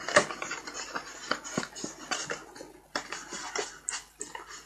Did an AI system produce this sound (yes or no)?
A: no